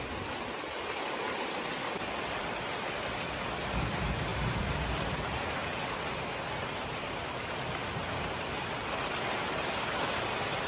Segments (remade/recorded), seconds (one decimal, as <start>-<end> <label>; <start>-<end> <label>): 0.0-4.3 recorded; 4.3-5.1 remade; 5.1-10.7 recorded